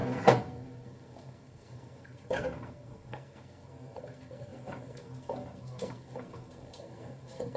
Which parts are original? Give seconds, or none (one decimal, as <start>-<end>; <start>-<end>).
none